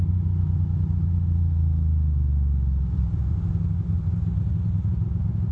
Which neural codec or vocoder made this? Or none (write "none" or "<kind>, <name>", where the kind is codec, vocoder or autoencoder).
none